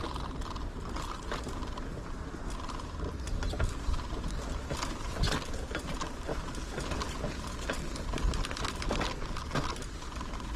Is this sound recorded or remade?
recorded